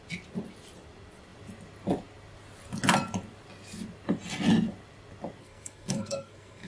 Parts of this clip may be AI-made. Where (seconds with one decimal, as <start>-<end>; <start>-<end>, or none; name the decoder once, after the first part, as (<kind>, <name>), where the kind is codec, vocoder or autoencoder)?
5.4-6.7 (codec, SNAC)